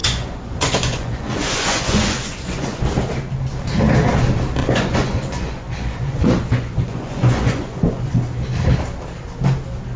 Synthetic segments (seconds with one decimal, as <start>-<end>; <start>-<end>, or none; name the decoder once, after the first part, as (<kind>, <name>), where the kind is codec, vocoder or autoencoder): 0.0-2.8 (vocoder, Vocos); 4.6-8.1